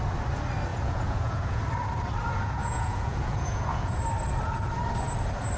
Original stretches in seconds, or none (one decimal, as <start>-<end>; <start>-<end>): 0.0-0.7; 1.6-2.6; 4.0-5.6